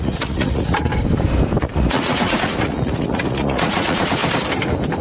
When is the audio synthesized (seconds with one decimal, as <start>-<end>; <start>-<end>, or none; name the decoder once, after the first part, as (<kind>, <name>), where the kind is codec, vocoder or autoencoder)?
0.0-0.9 (vocoder, Vocos); 1.6-4.2

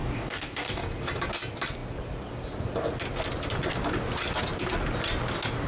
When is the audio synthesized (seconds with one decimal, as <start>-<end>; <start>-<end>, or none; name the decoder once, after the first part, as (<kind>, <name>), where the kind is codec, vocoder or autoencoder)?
0.0-0.8 (codec, DAC)